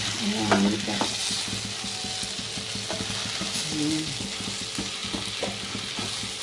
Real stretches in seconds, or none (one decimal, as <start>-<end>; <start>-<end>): 0.0-6.4